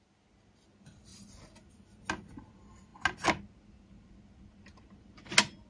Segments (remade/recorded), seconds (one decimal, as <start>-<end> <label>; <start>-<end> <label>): 0.0-5.7 recorded